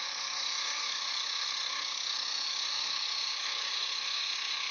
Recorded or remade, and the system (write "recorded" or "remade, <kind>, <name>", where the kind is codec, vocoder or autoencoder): remade, autoencoder, DAC-VAE